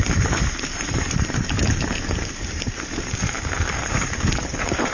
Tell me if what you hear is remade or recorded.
remade